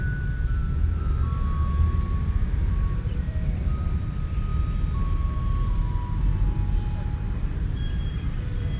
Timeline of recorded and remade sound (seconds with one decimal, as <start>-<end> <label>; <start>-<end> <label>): 0.0-0.6 remade; 0.6-2.7 recorded; 2.7-4.5 remade; 4.5-8.1 recorded; 8.1-8.8 remade